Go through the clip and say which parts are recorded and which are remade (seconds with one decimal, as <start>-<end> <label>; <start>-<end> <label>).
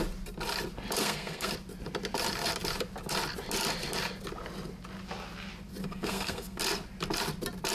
0.0-1.0 recorded; 1.0-1.5 remade; 1.5-5.8 recorded; 5.8-6.6 remade; 6.6-7.7 recorded